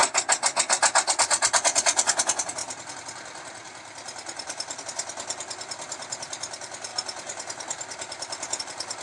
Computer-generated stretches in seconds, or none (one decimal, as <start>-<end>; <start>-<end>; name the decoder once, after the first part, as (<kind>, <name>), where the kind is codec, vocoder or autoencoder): 1.1-9.0 (vocoder, BigVGAN v2)